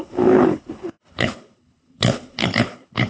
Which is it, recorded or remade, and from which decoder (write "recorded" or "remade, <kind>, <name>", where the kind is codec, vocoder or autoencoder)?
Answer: remade, codec, HILCodec